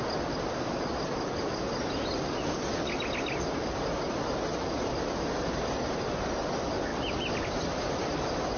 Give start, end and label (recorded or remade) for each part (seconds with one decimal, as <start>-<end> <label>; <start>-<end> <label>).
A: 0.0-8.6 recorded